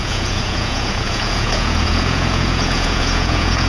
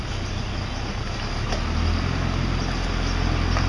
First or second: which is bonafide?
second